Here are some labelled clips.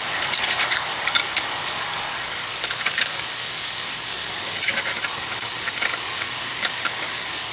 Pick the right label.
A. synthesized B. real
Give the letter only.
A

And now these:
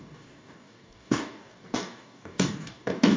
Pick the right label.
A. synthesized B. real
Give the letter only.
A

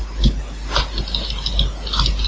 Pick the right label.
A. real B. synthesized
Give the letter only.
A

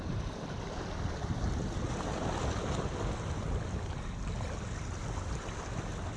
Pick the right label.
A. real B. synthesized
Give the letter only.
A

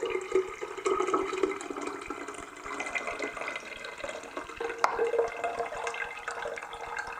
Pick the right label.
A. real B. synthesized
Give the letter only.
A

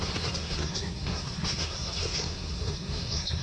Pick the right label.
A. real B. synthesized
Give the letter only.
B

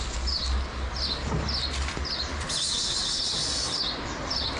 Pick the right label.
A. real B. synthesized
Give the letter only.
A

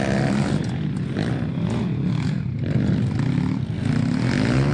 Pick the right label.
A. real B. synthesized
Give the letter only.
A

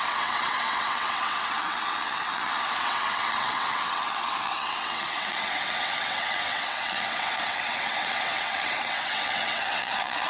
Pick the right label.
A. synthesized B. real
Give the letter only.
A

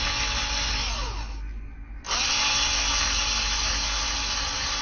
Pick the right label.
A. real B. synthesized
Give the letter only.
A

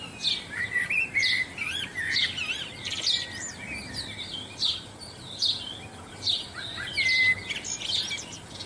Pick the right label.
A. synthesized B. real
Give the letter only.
B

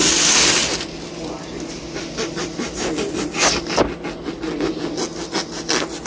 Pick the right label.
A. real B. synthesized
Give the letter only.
A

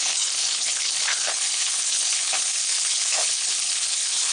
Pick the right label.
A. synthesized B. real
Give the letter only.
A